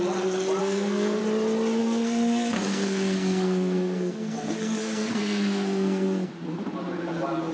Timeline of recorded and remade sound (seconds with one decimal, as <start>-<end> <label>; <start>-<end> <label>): 0.0-0.6 recorded; 0.6-1.2 remade; 1.2-1.8 recorded; 1.8-6.3 remade; 6.3-7.5 recorded